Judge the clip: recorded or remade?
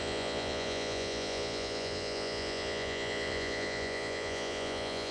remade